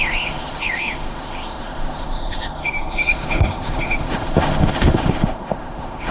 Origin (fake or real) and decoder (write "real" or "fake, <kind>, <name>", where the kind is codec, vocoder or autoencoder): fake, autoencoder, DAC-VAE